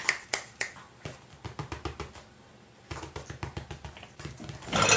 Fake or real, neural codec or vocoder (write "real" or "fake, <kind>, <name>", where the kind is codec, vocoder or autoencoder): real